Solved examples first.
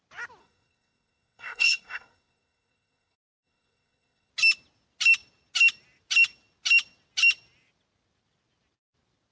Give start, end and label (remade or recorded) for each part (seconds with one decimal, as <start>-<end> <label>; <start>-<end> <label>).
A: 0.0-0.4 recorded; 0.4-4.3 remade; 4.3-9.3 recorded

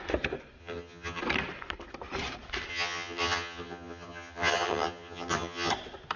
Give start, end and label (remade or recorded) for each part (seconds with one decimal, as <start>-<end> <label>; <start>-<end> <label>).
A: 0.0-0.6 recorded; 0.6-1.2 remade; 1.2-2.7 recorded; 2.7-5.7 remade; 5.7-6.2 recorded

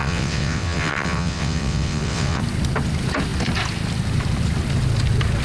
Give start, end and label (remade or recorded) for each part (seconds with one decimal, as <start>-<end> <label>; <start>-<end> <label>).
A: 0.0-2.4 remade; 2.4-5.4 recorded

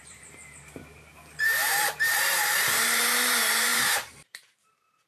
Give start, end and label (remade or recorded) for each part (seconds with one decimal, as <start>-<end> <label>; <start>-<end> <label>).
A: 0.0-5.1 remade